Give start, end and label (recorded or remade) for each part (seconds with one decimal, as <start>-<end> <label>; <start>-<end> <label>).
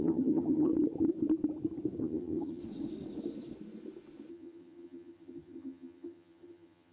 0.0-0.7 remade; 0.7-2.0 recorded; 2.0-2.6 remade; 2.6-4.3 recorded; 4.3-6.9 remade